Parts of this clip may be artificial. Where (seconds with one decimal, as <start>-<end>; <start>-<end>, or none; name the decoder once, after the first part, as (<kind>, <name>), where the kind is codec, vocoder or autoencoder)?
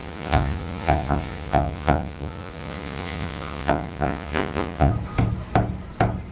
0.0-4.9 (vocoder, Vocos)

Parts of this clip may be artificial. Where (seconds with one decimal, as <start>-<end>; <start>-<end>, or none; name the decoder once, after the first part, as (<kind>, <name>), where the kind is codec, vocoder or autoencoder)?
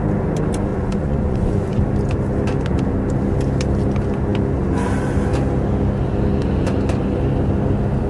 0.7-1.8 (vocoder, Vocos)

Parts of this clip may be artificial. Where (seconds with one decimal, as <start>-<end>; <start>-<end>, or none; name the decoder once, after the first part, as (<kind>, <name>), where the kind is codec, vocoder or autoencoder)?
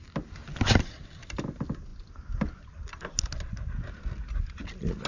none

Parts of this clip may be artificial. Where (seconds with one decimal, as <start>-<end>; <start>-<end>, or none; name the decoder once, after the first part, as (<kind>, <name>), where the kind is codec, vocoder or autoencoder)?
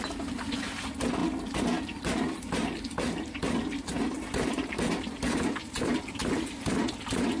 none